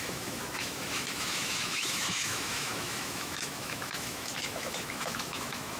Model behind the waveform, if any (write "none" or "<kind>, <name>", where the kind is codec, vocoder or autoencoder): autoencoder, DAC-VAE